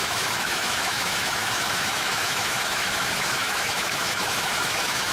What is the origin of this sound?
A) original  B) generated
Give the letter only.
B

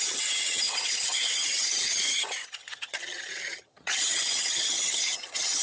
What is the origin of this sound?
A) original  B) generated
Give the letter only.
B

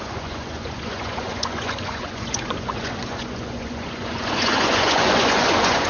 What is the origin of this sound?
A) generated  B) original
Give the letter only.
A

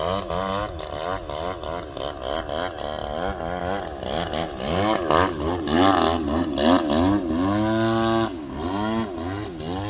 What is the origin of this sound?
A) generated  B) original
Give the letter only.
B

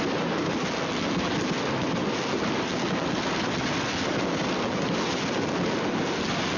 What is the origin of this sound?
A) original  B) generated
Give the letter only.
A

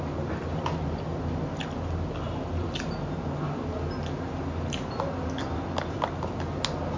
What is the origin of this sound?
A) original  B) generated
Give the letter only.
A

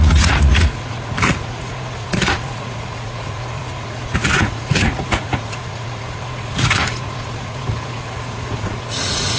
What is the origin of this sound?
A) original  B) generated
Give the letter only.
B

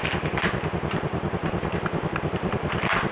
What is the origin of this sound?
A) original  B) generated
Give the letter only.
B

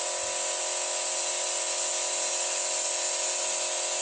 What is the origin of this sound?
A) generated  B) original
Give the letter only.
B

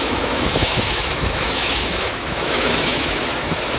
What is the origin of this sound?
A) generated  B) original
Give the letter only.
A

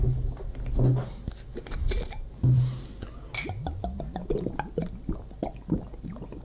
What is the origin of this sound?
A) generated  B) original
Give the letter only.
B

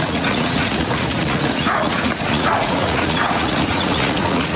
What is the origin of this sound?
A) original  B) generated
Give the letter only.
B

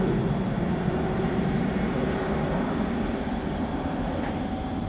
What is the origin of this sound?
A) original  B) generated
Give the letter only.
A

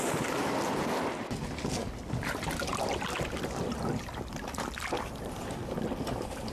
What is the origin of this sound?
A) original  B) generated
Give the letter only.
A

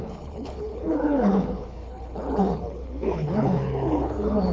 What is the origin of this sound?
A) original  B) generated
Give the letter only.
B